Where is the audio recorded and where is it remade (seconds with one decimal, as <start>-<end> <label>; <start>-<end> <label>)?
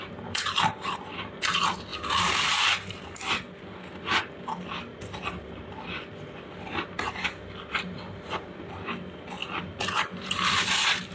0.0-4.9 recorded; 4.9-5.8 remade; 5.8-9.4 recorded; 9.4-9.9 remade; 9.9-11.1 recorded